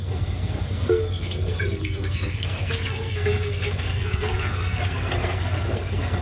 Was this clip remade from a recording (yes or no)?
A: yes